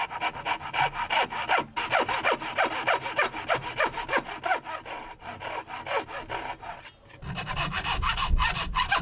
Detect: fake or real real